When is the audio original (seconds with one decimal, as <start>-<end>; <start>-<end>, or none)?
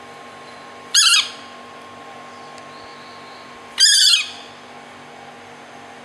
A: 0.0-6.0